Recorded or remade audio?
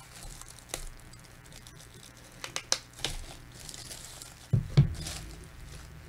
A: recorded